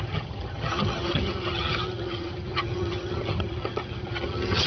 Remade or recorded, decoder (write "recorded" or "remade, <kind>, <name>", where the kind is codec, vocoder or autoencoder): remade, vocoder, HiFi-GAN